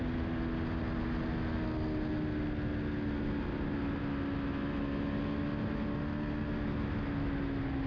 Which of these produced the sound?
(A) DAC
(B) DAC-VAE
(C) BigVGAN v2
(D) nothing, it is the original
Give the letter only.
D